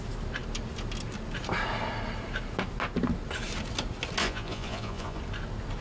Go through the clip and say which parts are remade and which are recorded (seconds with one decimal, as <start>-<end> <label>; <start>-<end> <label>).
0.0-4.2 recorded; 4.2-5.2 remade; 5.2-5.8 recorded